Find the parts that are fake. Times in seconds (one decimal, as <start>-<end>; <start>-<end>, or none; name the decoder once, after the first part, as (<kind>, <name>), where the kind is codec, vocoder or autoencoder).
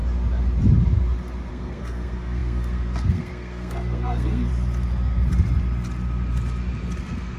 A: 1.5-4.5 (codec, SNAC); 7.0-7.4